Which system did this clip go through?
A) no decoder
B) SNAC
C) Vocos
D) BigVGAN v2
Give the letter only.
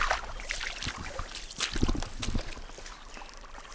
A